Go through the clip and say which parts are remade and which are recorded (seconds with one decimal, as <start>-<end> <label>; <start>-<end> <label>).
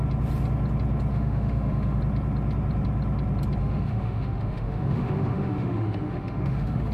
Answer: 0.0-1.1 recorded; 1.1-2.0 remade; 2.0-3.6 recorded; 3.6-6.9 remade